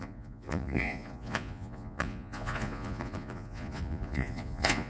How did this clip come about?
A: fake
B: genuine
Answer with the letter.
A